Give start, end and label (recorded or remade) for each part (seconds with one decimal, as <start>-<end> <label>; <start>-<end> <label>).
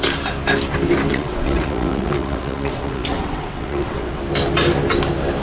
0.0-1.1 recorded; 1.1-4.2 remade; 4.2-5.4 recorded